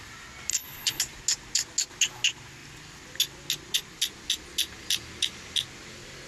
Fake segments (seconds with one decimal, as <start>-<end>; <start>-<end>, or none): 0.5-1.0